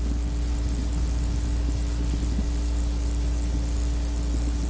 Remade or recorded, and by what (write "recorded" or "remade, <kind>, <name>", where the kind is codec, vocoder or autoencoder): recorded